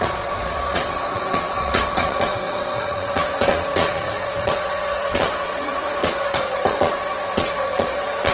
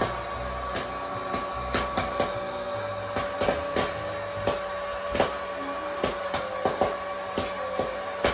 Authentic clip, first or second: second